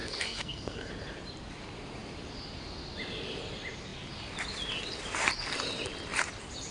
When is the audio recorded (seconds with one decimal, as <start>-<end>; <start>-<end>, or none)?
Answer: 0.9-6.7